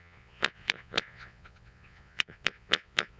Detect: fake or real fake